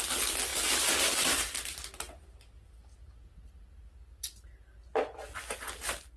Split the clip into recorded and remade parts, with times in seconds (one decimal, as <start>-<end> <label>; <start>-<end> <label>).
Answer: 0.0-6.2 recorded